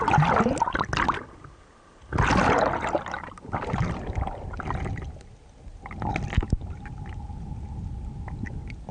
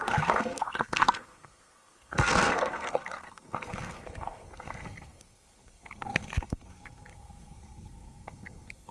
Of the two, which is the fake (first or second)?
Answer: second